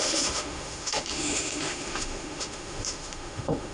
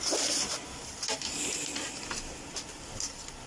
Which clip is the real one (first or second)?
second